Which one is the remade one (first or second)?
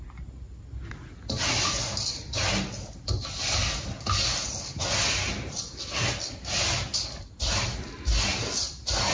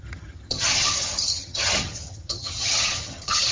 second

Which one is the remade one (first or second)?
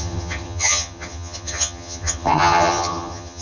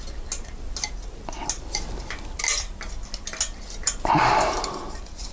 first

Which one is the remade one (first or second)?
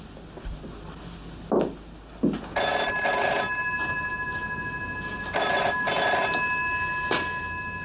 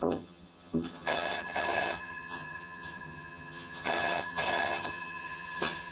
second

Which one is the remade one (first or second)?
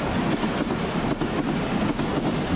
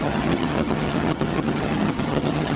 second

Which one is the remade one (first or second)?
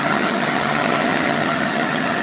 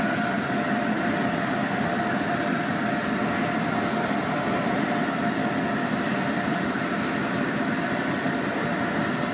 first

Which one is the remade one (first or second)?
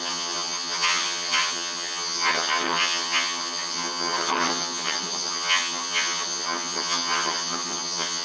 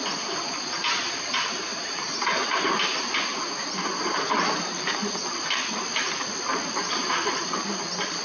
first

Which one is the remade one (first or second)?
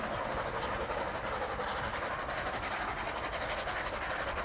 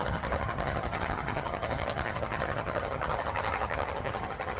second